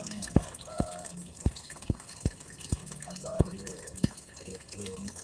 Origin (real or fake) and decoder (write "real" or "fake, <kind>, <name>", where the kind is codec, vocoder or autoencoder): fake, codec, SNAC